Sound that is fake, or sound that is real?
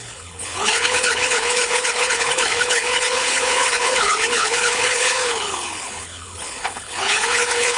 fake